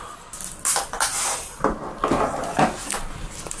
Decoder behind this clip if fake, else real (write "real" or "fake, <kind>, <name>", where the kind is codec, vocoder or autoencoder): real